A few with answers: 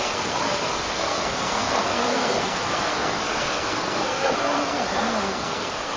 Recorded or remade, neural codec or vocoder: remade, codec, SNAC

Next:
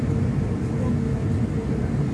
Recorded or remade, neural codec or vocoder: recorded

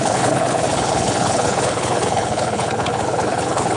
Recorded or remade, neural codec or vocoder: remade, codec, HILCodec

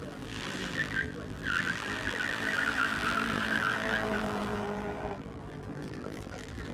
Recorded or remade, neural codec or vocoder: remade, vocoder, BigVGAN v2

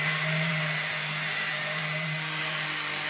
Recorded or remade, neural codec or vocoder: remade, vocoder, BigVGAN v2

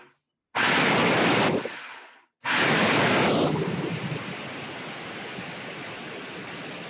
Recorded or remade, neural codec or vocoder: remade, vocoder, BigVGAN v2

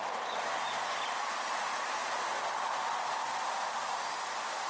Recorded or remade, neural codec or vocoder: recorded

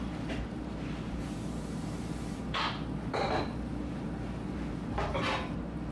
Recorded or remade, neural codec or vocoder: remade, vocoder, BigVGAN v2